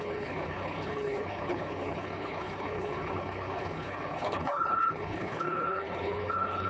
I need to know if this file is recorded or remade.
remade